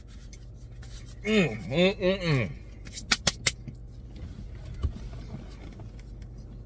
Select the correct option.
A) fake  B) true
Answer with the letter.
B